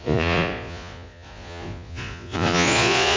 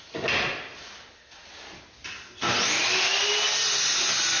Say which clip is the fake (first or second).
first